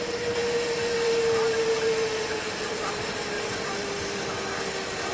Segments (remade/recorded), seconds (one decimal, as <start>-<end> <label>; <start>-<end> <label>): 0.0-5.1 recorded